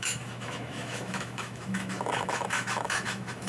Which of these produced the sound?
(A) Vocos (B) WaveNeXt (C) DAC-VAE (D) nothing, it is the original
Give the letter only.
C